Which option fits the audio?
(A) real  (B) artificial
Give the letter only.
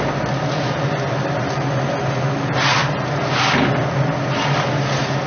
A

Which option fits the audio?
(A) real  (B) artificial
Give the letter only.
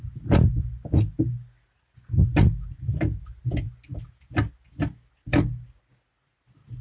A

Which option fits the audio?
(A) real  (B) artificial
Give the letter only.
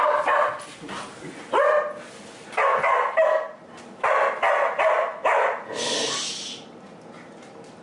A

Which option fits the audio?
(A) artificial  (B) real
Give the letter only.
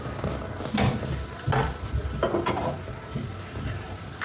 B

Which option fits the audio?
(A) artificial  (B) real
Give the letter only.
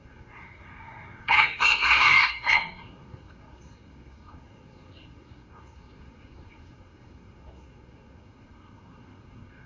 A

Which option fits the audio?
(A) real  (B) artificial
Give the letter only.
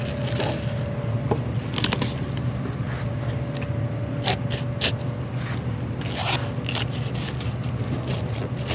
A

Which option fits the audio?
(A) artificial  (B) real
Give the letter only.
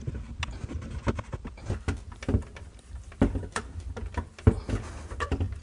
B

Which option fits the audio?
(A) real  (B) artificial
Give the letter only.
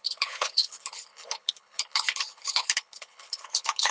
B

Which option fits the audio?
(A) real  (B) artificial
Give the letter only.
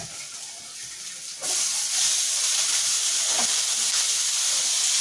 A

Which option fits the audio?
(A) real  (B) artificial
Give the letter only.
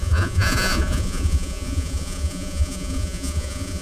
B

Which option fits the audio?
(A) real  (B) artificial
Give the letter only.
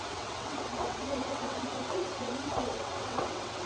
B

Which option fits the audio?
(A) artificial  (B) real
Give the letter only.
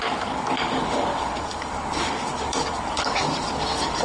A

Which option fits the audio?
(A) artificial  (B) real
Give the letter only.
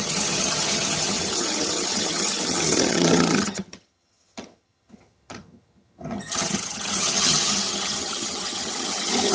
A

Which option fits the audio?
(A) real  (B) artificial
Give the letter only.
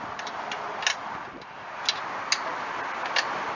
A